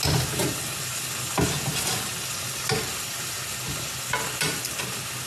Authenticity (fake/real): real